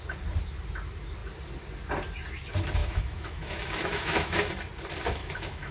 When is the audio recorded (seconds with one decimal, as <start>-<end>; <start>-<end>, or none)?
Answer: 0.0-2.8; 4.5-5.2